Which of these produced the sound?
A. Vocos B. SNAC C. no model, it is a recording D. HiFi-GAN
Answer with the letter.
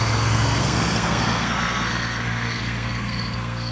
B